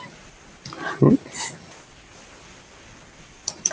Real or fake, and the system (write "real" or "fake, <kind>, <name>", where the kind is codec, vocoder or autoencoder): fake, vocoder, BigVGAN v2